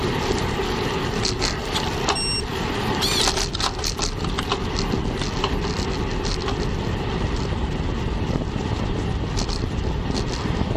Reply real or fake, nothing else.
real